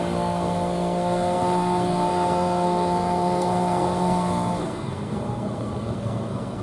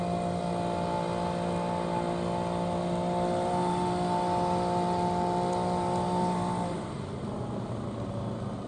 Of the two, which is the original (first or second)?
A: second